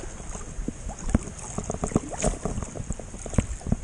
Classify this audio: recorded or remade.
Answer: recorded